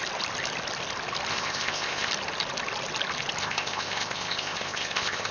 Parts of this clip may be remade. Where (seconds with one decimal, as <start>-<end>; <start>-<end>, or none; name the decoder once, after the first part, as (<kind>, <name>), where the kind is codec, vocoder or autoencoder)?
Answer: 1.3-2.1 (codec, ZipCodec); 3.4-5.3